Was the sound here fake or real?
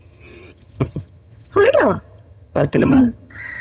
fake